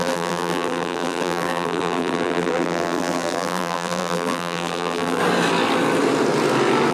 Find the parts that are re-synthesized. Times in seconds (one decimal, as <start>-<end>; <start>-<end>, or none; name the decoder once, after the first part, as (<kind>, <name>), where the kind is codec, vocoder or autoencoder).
0.0-5.2 (vocoder, BigVGAN v2)